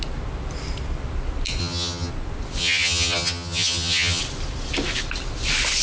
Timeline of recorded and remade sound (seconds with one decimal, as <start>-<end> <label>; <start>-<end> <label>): 0.0-1.6 recorded; 1.6-2.1 remade; 2.1-2.6 recorded; 2.6-4.2 remade; 4.2-5.8 recorded

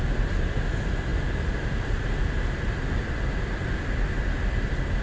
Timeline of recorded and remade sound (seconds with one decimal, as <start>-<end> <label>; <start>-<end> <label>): 0.0-5.0 recorded